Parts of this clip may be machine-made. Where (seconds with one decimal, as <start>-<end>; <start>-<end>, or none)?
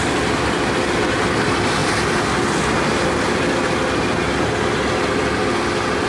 none